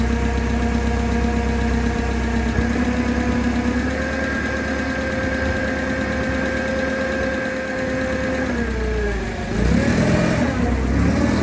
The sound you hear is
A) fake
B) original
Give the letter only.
B